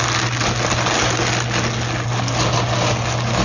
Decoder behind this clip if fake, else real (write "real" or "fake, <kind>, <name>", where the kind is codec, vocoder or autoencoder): real